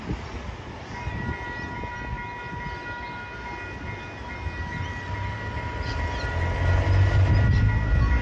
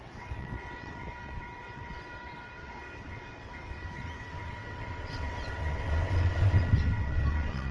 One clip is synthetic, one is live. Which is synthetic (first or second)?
second